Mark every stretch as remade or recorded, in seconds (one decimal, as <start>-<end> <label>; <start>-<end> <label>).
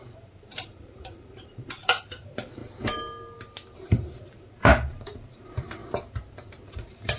0.0-2.6 remade; 2.6-3.9 recorded; 3.9-5.8 remade; 5.8-6.6 recorded; 6.6-7.2 remade